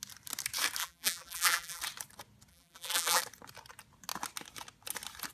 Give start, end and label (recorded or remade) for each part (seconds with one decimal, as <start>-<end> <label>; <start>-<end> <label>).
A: 0.0-0.8 recorded; 0.8-1.8 remade; 1.8-2.5 recorded; 2.5-3.2 remade; 3.2-5.3 recorded